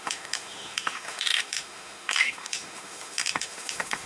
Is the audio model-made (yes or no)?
yes